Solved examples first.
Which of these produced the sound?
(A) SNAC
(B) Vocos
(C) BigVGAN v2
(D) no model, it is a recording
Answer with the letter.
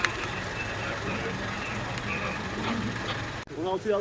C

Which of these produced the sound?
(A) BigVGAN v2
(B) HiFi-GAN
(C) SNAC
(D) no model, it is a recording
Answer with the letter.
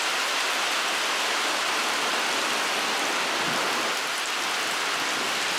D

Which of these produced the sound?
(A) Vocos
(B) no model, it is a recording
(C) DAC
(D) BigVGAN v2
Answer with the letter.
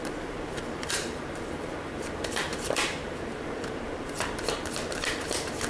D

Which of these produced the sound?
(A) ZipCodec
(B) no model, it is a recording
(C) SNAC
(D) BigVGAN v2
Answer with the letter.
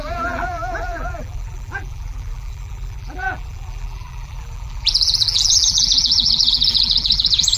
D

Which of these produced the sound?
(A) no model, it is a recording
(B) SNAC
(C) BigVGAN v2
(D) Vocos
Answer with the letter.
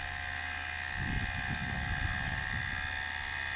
A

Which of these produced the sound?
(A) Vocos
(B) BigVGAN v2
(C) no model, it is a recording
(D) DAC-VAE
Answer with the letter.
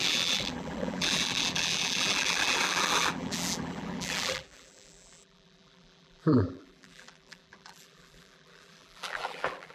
B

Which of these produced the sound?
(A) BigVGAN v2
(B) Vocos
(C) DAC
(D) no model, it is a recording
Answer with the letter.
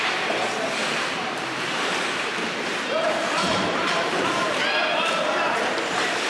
A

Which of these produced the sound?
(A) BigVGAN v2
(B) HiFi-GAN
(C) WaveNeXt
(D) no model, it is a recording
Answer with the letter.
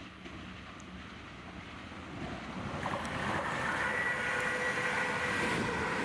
D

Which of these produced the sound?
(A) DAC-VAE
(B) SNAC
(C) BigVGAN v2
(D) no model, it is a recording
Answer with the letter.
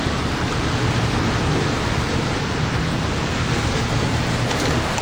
C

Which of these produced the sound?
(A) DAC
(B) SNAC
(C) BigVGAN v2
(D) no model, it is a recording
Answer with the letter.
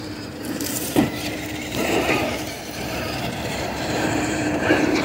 C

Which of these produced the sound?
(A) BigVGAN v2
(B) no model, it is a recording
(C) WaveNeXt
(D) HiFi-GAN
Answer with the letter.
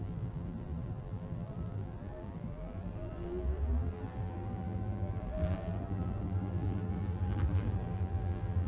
A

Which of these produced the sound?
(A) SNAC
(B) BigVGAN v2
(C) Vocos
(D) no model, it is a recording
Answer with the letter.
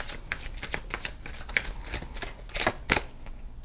D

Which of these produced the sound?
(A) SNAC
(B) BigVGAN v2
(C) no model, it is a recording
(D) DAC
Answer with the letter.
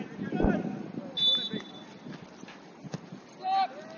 C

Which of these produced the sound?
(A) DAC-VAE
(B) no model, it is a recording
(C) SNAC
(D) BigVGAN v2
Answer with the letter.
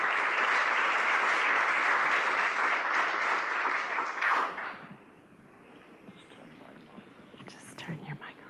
B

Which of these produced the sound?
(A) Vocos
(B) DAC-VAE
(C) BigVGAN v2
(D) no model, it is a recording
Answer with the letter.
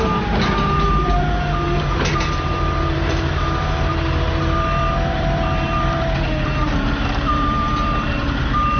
C